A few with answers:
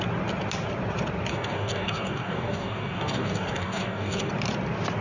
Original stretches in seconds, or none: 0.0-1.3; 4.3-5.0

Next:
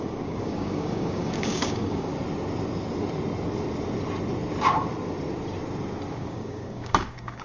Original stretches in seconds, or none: 2.1-6.1

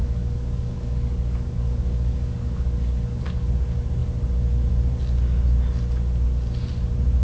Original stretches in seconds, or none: 3.5-7.2

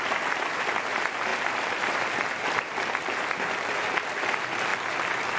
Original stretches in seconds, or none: 0.0-5.4

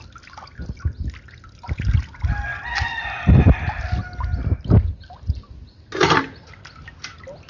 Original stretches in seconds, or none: 0.0-7.5

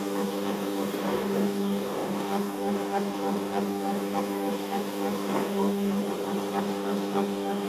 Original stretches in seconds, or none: 6.0-6.6

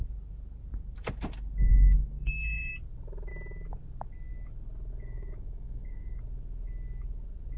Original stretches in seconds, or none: 0.0-1.7; 2.7-4.9; 6.2-7.6